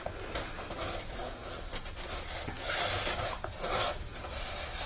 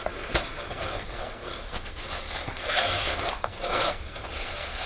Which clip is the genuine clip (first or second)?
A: first